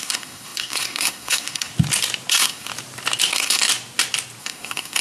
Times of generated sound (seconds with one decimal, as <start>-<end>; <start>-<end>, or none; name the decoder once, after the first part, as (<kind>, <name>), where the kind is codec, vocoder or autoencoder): 0.0-1.7 (codec, SNAC); 2.3-2.7; 3.3-3.7; 4.4-5.0

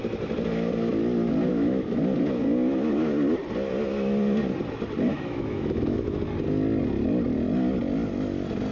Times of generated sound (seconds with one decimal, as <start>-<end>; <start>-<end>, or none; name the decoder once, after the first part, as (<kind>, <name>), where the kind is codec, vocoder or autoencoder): 1.5-2.0 (autoencoder, DAC-VAE); 5.1-6.2

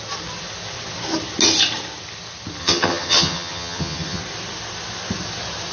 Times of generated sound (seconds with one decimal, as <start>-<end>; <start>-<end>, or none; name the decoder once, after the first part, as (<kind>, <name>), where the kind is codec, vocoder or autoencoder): 2.6-4.2 (vocoder, HiFi-GAN)

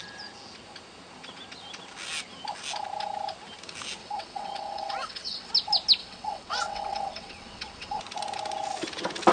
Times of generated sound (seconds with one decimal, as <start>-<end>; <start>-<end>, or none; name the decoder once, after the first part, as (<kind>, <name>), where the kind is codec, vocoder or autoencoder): 4.0-5.5 (vocoder, WaveNeXt); 6.0-8.0

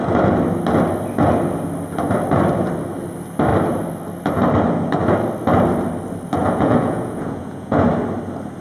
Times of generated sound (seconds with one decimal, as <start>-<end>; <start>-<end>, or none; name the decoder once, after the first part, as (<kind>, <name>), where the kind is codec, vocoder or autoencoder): 6.4-7.9 (vocoder, Vocos)

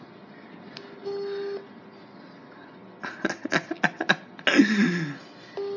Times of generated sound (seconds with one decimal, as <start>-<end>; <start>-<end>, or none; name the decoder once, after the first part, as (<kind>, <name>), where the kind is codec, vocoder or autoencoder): 2.4-3.1 (vocoder, Vocos)

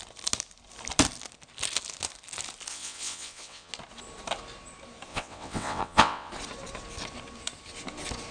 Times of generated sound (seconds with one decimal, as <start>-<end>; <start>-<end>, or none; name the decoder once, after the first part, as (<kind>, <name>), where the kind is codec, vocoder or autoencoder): 2.7-3.7 (vocoder, WaveNeXt); 5.1-6.3

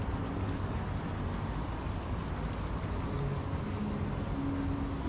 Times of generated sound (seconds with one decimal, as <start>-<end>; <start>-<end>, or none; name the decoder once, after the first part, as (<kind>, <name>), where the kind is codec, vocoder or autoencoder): none